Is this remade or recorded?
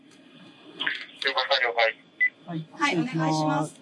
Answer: recorded